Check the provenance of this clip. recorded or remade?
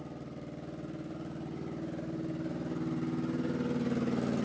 recorded